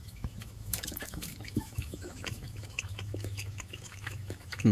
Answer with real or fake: fake